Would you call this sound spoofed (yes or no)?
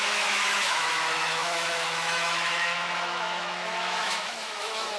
yes